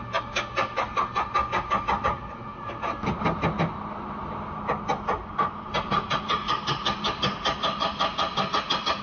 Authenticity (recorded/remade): recorded